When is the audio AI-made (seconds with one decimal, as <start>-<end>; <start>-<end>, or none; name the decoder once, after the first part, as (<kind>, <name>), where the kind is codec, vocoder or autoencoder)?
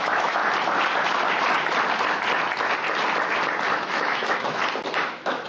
0.0-0.4 (autoencoder, DAC-VAE); 3.7-4.6; 5.1-5.5